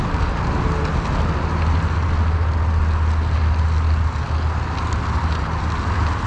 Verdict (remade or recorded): recorded